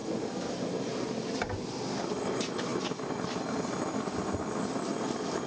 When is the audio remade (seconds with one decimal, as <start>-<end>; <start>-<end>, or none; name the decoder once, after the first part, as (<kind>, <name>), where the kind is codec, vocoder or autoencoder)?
none